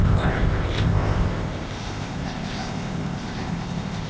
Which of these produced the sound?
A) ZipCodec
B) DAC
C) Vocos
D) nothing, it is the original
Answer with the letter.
A